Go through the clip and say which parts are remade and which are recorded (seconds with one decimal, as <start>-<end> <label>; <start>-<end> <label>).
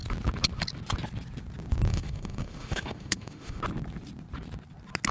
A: 0.0-1.9 recorded; 1.9-3.6 remade; 3.6-5.1 recorded